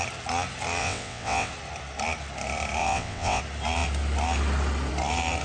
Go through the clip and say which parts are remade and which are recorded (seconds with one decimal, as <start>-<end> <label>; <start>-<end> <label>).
0.0-0.8 recorded; 0.8-1.5 remade; 1.5-2.8 recorded; 2.8-3.4 remade; 3.4-5.4 recorded